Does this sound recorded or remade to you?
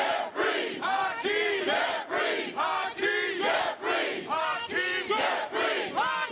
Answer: remade